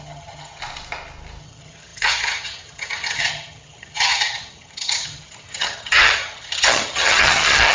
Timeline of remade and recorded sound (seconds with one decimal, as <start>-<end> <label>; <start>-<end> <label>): 0.0-0.6 remade; 0.6-1.4 recorded; 1.4-7.7 remade

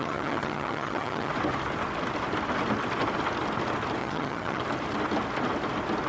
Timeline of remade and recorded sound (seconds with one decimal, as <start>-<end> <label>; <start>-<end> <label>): 0.0-1.3 remade; 1.3-4.0 recorded; 4.0-4.6 remade; 4.6-6.1 recorded

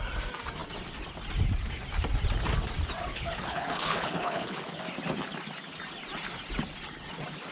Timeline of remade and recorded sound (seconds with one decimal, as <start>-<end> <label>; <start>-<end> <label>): 0.0-3.1 recorded; 3.1-4.8 remade; 4.8-7.5 recorded

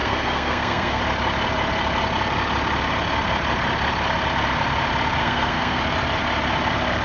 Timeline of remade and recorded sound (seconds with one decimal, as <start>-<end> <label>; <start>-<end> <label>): 0.0-1.0 remade; 1.0-5.2 recorded; 5.2-5.8 remade; 5.8-7.0 recorded